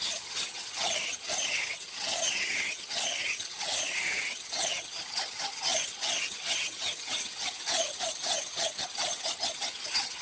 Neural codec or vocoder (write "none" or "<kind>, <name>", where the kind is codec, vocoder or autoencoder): vocoder, HiFi-GAN